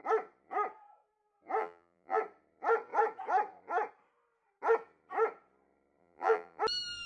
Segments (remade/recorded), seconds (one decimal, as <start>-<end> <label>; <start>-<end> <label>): 0.0-1.6 recorded; 1.6-2.2 remade; 2.2-6.0 recorded; 6.0-6.6 remade; 6.6-7.1 recorded